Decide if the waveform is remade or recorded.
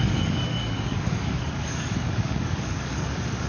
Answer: remade